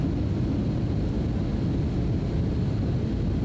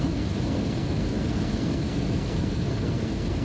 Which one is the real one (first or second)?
first